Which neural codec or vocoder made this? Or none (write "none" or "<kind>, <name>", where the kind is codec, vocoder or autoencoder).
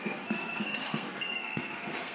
codec, SNAC